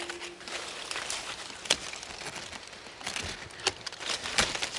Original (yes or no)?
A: yes